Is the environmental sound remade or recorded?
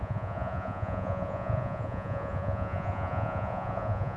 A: remade